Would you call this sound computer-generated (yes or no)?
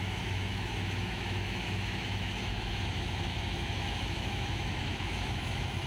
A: yes